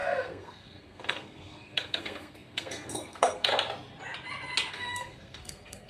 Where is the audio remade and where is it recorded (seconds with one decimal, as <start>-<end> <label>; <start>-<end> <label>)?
0.0-3.5 remade; 3.5-4.7 recorded; 4.7-5.9 remade